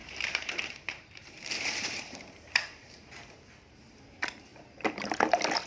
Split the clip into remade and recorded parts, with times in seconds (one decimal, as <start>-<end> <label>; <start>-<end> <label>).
0.0-3.4 remade; 3.4-4.5 recorded; 4.5-5.1 remade; 5.1-5.7 recorded